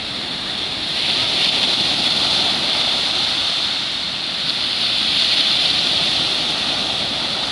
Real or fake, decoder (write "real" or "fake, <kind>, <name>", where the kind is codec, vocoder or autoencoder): real